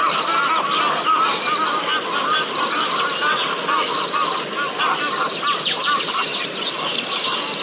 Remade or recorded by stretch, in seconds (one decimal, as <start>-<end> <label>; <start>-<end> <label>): 0.0-1.9 remade; 1.9-6.5 recorded; 6.5-7.6 remade